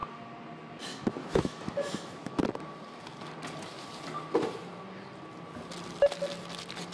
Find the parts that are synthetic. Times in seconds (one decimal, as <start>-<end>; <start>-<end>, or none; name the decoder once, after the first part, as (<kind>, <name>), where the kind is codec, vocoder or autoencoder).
1.2-2.4 (autoencoder, DAC-VAE)